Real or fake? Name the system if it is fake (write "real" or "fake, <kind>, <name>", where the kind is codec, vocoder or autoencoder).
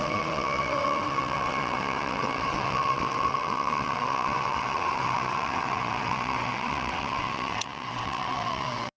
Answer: fake, vocoder, WaveNeXt